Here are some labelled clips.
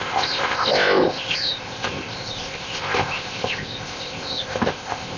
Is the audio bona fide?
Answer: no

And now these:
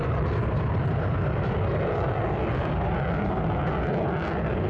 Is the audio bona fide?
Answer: yes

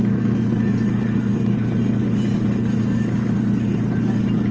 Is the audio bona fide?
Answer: yes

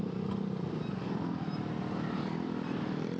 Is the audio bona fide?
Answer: yes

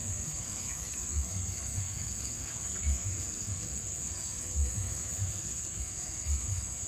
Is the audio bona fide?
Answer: no